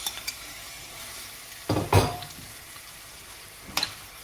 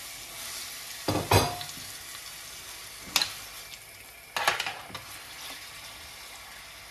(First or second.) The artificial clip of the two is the first